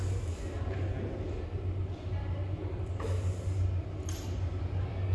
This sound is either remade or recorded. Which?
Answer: recorded